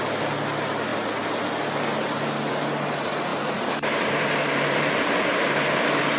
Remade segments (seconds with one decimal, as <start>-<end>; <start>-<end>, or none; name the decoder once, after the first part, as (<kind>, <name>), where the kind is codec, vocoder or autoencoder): 3.3-4.9 (vocoder, BigVGAN v2)